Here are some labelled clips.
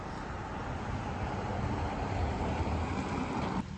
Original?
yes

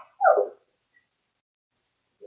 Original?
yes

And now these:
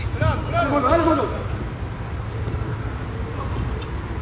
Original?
yes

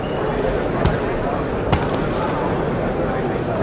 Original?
yes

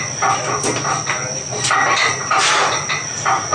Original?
yes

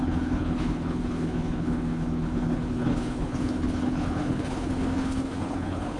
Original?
no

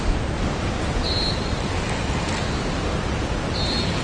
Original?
yes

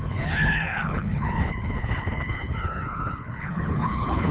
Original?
no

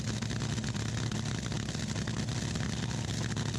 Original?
yes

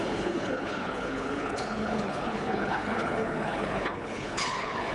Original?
no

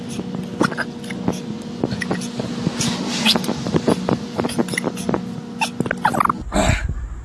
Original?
yes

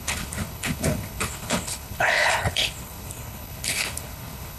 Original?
no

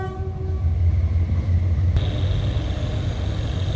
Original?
yes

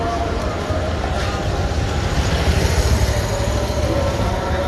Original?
yes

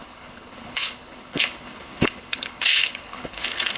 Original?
no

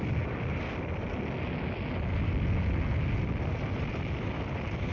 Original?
yes